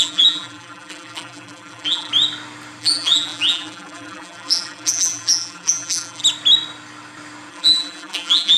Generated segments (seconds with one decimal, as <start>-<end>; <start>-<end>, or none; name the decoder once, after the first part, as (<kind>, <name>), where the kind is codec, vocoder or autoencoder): 0.0-2.1 (vocoder, BigVGAN v2); 2.8-6.2; 7.5-8.6